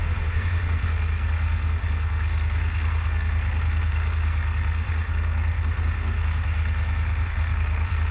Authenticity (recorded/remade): remade